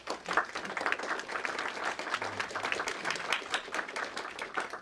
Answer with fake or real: real